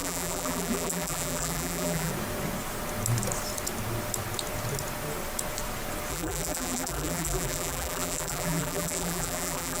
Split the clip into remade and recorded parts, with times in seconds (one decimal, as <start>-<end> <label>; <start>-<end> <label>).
0.0-2.1 remade; 2.1-6.1 recorded; 6.1-9.8 remade